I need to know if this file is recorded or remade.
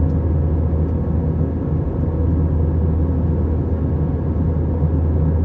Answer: recorded